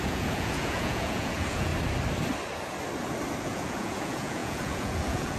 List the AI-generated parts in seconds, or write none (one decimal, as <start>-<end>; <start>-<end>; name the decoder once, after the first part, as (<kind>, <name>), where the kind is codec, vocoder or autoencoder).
0.0-1.7 (vocoder, Vocos); 3.4-5.4

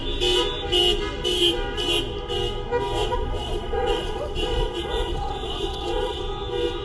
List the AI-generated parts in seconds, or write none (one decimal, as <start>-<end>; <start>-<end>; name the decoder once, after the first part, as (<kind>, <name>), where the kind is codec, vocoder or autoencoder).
3.0-6.2 (vocoder, Vocos)

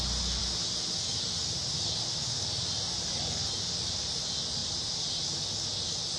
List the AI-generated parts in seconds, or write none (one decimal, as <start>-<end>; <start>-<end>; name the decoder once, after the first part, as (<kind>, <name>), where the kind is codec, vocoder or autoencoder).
4.6-5.4 (vocoder, BigVGAN v2)

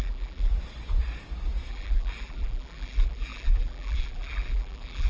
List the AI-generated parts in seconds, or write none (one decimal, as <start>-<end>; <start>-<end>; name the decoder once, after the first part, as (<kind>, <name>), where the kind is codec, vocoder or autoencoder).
0.0-0.5 (vocoder, BigVGAN v2); 1.7-5.1

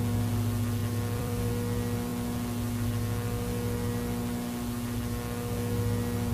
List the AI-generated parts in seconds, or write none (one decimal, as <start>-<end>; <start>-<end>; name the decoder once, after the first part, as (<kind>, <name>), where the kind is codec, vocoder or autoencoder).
0.8-1.5 (vocoder, BigVGAN v2)

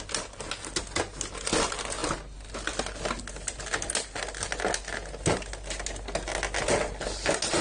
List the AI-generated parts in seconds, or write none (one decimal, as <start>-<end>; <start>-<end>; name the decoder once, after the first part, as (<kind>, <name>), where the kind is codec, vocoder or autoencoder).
none